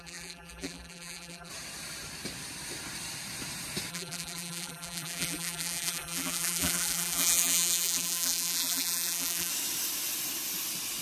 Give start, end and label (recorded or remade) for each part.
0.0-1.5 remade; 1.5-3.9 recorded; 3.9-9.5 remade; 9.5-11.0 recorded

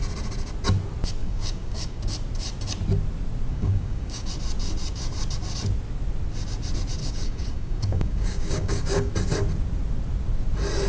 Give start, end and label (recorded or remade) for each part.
0.0-1.2 recorded; 1.2-2.0 remade; 2.0-3.5 recorded; 3.5-4.3 remade; 4.3-7.0 recorded; 7.0-9.1 remade; 9.1-10.9 recorded

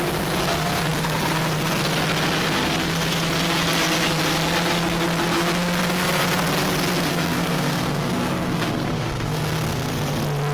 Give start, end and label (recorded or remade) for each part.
0.0-7.1 recorded; 7.1-9.9 remade; 9.9-10.5 recorded

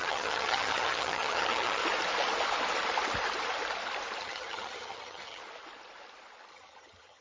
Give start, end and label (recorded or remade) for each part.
0.0-1.8 remade; 1.8-4.2 recorded; 4.2-5.4 remade; 5.4-6.5 recorded; 6.5-7.2 remade

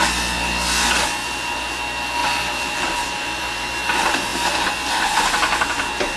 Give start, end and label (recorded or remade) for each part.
0.0-1.2 recorded; 1.2-1.8 remade; 1.8-2.2 recorded; 2.2-3.8 remade; 3.8-6.2 recorded

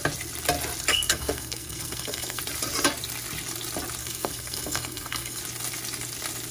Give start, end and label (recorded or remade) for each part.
0.0-0.9 recorded; 0.9-2.4 remade; 2.4-4.0 recorded; 4.0-5.4 remade; 5.4-6.5 recorded

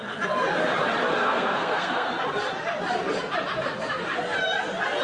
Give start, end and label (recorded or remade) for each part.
0.0-1.1 recorded; 1.1-2.1 remade; 2.1-5.0 recorded